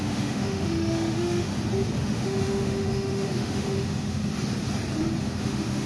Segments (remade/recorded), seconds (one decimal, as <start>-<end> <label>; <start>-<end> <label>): 0.0-1.5 remade; 1.5-2.0 recorded; 2.0-4.2 remade; 4.2-5.2 recorded; 5.2-5.9 remade

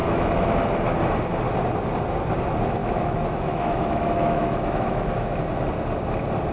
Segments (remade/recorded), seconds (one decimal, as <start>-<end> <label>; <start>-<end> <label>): 0.0-0.6 remade; 0.6-2.8 recorded; 2.8-5.4 remade; 5.4-6.5 recorded

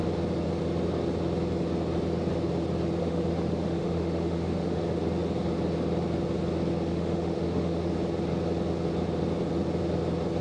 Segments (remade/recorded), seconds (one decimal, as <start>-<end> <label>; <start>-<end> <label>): 0.0-3.0 recorded; 3.0-4.8 remade; 4.8-6.9 recorded; 6.9-7.9 remade; 7.9-10.4 recorded

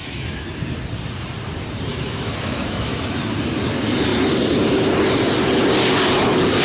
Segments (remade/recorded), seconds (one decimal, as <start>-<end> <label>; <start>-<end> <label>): 0.0-0.6 remade; 0.6-1.9 recorded; 1.9-3.0 remade; 3.0-6.6 recorded

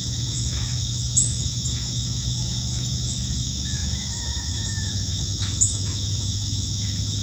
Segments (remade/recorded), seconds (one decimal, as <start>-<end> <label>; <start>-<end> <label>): 0.0-7.2 remade

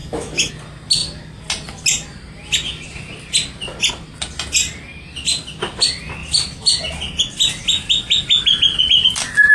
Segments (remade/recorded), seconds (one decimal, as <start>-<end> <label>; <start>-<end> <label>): 0.0-0.5 remade; 0.5-9.5 recorded